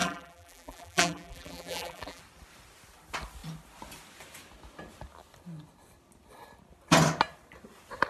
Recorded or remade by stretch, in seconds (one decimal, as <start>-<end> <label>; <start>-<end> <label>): 0.0-2.2 remade; 2.2-8.1 recorded